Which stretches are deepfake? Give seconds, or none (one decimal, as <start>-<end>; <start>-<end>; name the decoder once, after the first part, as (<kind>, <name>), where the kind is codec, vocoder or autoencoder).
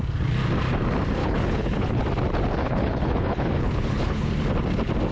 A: 1.2-2.0 (codec, HILCodec); 2.6-4.3